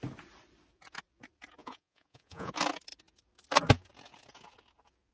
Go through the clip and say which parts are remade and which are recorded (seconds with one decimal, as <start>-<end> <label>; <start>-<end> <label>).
0.0-1.6 recorded; 1.6-2.5 remade; 2.5-5.1 recorded